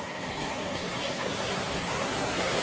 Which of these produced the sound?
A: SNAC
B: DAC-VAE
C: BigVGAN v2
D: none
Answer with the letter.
A